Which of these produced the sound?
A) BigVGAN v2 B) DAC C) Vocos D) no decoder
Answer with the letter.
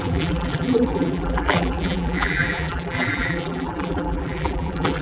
A